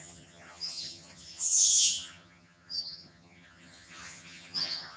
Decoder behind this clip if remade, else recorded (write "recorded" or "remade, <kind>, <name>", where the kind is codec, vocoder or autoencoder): remade, vocoder, HiFi-GAN